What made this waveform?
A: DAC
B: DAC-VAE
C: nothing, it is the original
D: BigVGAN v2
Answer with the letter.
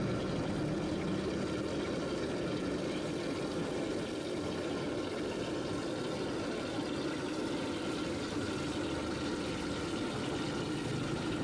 C